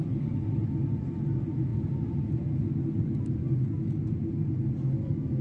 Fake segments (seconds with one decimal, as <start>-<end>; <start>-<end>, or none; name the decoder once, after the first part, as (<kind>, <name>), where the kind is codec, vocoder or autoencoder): none